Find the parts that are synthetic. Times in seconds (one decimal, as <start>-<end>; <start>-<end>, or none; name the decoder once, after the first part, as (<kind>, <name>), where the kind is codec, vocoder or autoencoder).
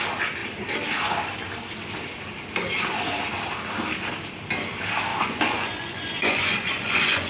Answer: 5.1-7.3 (vocoder, Vocos)